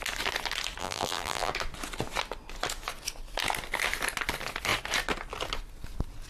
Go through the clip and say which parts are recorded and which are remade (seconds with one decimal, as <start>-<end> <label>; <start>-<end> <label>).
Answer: 0.0-0.8 recorded; 0.8-1.5 remade; 1.5-6.3 recorded